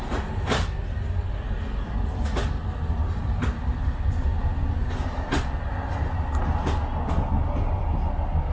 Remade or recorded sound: recorded